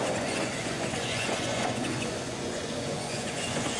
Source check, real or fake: fake